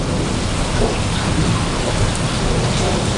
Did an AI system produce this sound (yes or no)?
no